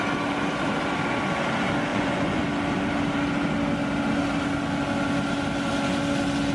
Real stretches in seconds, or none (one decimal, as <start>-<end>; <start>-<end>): 0.0-1.9; 2.4-6.5